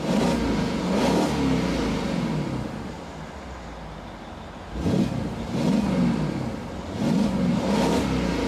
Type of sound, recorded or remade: recorded